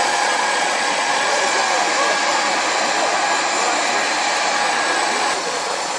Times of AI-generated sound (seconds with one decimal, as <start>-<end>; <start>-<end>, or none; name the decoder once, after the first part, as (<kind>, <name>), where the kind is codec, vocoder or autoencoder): 0.0-1.6 (vocoder, Vocos); 5.0-6.0